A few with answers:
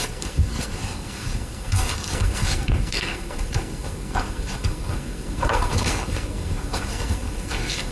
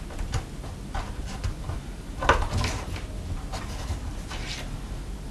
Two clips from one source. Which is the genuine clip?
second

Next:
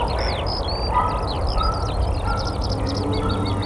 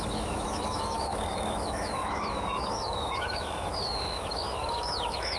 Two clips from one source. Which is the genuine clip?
first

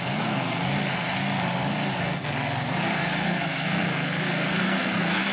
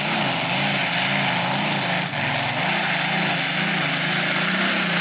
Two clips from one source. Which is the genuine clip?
second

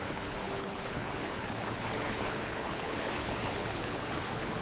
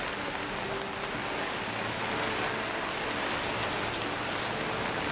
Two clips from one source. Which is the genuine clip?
second